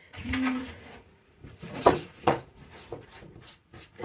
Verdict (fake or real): fake